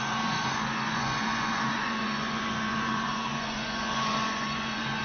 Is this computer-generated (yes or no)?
yes